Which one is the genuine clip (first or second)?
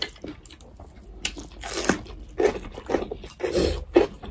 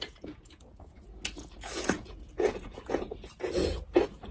first